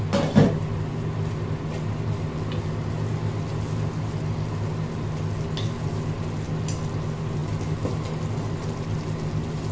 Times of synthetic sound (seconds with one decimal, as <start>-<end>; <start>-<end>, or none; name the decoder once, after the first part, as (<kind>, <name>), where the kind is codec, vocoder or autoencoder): none